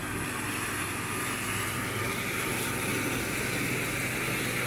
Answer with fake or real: real